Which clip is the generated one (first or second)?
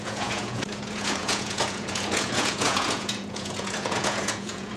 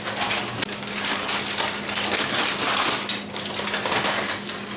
first